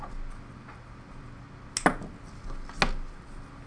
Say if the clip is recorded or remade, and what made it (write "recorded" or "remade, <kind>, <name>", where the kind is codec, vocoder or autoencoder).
recorded